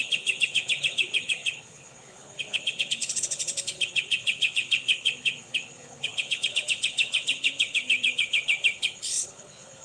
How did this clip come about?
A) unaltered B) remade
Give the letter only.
B